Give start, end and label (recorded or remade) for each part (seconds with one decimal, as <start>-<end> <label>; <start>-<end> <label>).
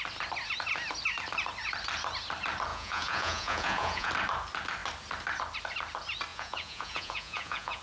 0.0-2.7 recorded; 2.7-4.1 remade; 4.1-6.3 recorded; 6.3-7.8 remade